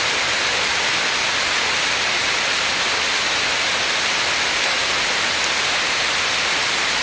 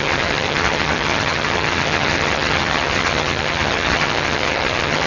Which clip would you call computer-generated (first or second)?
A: second